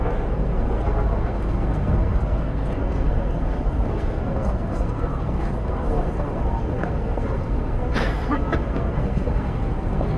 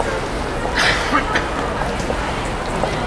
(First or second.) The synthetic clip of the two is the first